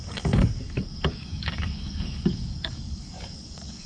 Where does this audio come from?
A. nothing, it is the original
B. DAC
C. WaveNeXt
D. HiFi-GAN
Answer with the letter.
B